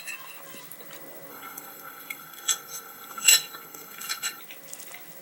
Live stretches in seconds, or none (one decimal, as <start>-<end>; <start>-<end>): 0.0-1.3; 4.4-5.2